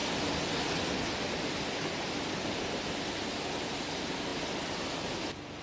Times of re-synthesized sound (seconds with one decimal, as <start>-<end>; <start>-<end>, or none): none